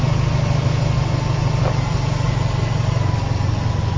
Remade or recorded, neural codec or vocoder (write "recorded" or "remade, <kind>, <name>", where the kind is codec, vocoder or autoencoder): recorded